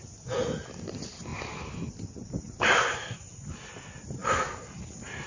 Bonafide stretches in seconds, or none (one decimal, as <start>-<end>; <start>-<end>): 0.0-5.3